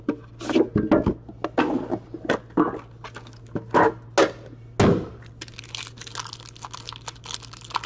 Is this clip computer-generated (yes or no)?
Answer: no